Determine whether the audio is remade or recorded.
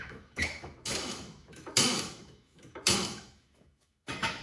remade